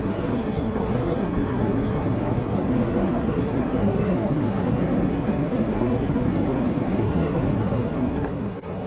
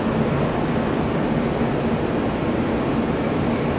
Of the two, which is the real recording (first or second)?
second